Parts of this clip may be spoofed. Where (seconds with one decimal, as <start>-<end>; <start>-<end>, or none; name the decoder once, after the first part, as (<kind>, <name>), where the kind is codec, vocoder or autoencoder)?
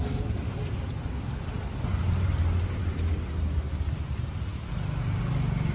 none